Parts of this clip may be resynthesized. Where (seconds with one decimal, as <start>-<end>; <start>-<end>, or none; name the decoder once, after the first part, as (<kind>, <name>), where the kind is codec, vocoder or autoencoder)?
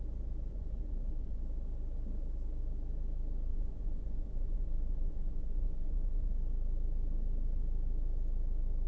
0.5-1.4 (vocoder, Vocos); 3.5-6.3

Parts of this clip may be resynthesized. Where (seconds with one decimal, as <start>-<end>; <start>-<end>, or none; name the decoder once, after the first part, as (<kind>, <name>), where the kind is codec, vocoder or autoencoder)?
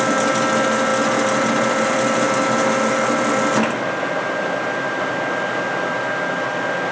none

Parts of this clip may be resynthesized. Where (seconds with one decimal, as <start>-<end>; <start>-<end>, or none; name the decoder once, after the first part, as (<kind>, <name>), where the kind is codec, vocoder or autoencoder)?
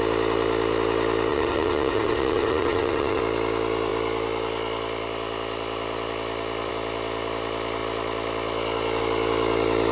1.3-3.2 (vocoder, Vocos)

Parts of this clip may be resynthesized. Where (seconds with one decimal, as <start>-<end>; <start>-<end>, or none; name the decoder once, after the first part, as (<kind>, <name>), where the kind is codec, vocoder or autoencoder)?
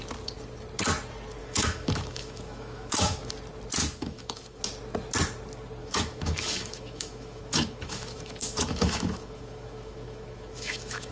1.4-3.3 (autoencoder, DAC-VAE); 3.8-4.6; 5.8-11.1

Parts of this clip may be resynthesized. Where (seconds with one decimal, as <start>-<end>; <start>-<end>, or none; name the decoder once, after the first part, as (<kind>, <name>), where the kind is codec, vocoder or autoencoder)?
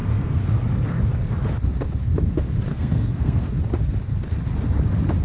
0.0-0.5 (codec, SNAC); 2.7-3.5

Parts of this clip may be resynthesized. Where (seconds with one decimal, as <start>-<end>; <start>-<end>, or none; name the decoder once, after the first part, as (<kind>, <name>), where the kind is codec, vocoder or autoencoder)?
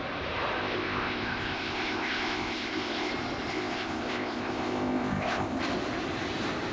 0.6-3.1 (codec, ZipCodec); 3.5-5.6